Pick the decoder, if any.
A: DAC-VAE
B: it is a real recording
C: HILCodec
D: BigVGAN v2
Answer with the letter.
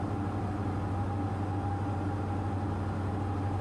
B